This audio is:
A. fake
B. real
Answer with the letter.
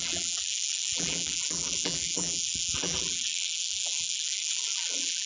A